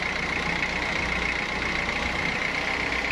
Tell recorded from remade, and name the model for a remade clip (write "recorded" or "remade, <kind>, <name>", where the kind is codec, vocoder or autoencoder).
recorded